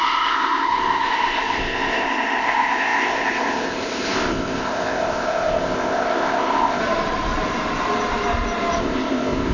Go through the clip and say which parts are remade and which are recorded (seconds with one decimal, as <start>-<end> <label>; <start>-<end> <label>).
0.0-6.8 remade; 6.8-8.8 recorded; 8.8-9.5 remade